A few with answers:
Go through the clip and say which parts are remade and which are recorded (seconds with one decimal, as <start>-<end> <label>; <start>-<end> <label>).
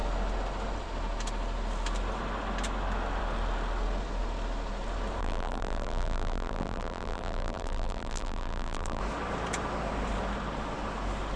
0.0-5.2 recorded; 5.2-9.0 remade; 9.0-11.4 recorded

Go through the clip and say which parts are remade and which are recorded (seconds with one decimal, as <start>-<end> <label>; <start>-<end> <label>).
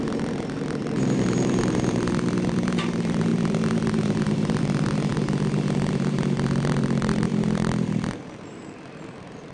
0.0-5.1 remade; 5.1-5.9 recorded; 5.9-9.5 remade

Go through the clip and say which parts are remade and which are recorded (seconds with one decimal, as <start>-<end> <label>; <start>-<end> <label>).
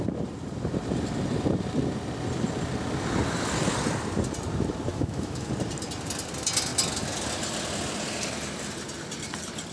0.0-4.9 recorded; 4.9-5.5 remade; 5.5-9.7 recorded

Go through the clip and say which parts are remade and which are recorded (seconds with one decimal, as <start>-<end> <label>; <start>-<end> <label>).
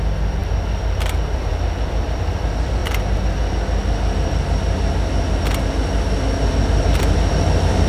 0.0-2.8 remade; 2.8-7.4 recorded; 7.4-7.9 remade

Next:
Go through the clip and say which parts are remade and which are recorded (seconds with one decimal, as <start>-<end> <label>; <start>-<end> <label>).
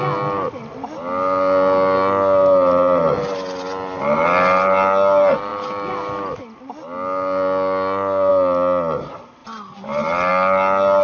0.0-11.0 recorded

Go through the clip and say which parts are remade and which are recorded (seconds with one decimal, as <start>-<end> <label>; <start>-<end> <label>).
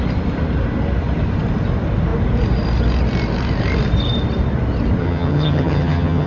0.0-5.0 recorded; 5.0-6.3 remade